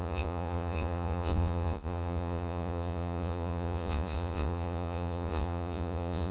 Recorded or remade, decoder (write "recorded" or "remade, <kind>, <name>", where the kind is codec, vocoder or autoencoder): remade, vocoder, Vocos